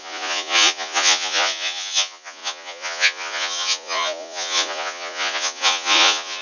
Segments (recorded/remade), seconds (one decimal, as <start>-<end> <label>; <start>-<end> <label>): 0.0-6.4 remade